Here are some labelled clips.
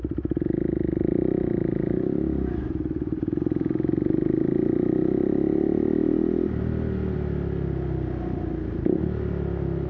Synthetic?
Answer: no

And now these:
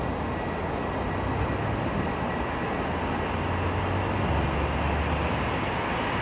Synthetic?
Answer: no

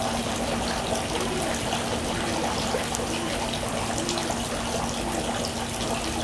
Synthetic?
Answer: no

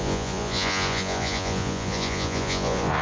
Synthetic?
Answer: yes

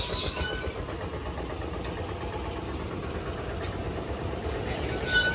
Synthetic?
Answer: no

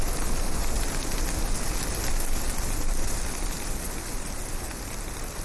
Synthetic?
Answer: no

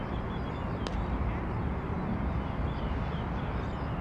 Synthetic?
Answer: no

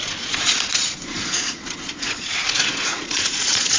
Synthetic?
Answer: yes